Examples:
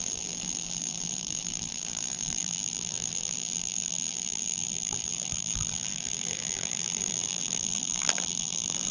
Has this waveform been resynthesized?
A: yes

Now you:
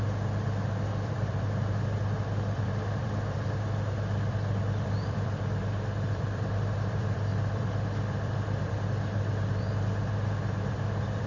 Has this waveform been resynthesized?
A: yes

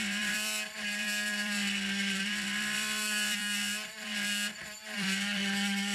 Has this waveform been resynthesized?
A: yes